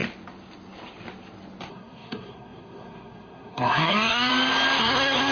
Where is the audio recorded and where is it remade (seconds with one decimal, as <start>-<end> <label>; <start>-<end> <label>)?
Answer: 0.0-1.7 recorded; 1.7-4.3 remade; 4.3-4.8 recorded; 4.8-5.3 remade